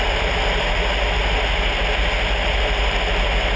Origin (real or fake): real